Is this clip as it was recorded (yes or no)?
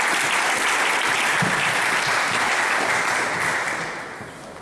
yes